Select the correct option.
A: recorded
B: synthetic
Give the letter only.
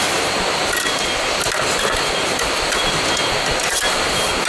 A